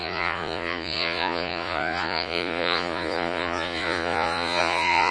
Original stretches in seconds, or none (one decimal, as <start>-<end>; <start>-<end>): none